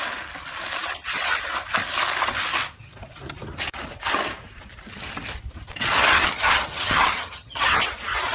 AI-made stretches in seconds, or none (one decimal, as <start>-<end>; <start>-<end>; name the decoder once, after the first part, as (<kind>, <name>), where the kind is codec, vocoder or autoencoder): 6.1-7.8 (vocoder, HiFi-GAN)